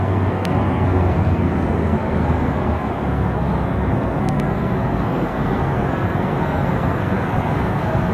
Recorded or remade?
remade